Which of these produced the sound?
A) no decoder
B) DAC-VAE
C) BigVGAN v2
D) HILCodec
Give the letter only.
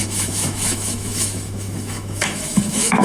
B